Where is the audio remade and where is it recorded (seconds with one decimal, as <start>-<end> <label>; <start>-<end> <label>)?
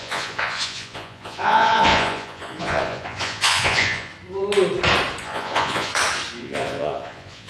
0.0-4.1 remade; 4.1-5.2 recorded; 5.2-5.9 remade; 5.9-6.4 recorded; 6.4-7.5 remade